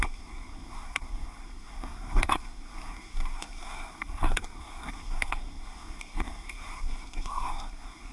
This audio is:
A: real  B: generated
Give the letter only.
B